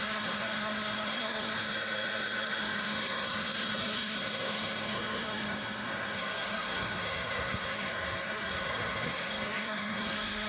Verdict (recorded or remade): remade